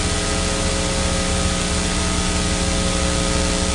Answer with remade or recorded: recorded